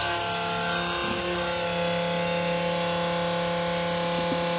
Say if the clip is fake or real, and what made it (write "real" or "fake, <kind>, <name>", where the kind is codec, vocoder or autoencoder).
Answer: real